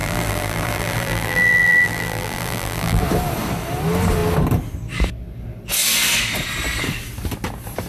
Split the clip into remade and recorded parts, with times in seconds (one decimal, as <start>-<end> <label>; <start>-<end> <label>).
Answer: 0.0-3.0 remade; 3.0-7.9 recorded

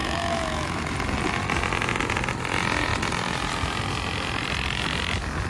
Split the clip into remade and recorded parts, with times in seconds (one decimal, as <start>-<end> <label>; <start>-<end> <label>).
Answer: 0.0-0.8 remade; 0.8-5.5 recorded

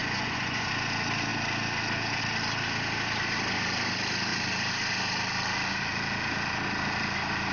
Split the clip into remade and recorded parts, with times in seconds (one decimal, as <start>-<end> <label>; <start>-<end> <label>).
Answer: 0.0-0.7 remade; 0.7-7.5 recorded

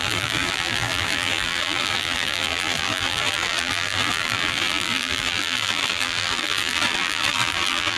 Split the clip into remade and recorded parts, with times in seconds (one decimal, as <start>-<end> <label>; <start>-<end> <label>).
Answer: 0.0-8.0 remade

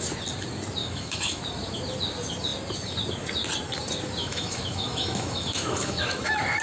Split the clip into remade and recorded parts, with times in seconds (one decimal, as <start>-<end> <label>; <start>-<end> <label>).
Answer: 0.0-0.8 recorded; 0.8-1.4 remade; 1.4-4.2 recorded; 4.2-6.6 remade

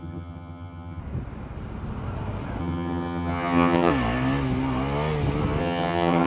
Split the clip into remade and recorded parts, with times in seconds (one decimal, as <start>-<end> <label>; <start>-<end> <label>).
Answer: 0.0-1.0 remade; 1.0-2.6 recorded; 2.6-3.9 remade; 3.9-5.6 recorded; 5.6-6.3 remade

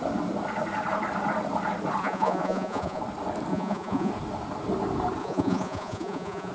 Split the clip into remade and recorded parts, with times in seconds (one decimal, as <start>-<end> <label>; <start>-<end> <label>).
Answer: 0.0-2.0 recorded; 2.0-3.0 remade; 3.0-3.5 recorded; 3.5-4.1 remade; 4.1-5.2 recorded; 5.2-6.5 remade